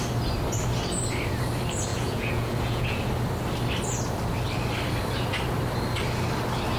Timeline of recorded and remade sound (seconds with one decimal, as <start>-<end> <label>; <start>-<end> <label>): 0.0-1.9 recorded; 1.9-3.1 remade; 3.1-6.8 recorded

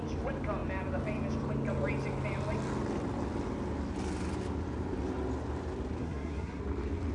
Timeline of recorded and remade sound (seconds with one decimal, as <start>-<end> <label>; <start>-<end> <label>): 0.0-6.0 recorded; 6.0-6.6 remade; 6.6-7.1 recorded

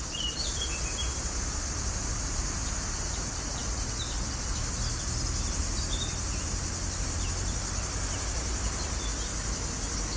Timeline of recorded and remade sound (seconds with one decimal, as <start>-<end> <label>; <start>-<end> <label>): 0.0-10.2 recorded

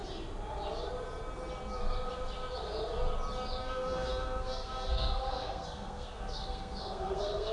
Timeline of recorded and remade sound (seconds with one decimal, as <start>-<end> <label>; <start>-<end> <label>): 0.0-3.6 recorded; 3.6-7.5 remade